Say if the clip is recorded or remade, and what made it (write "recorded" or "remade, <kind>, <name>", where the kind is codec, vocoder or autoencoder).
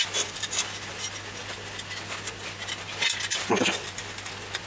recorded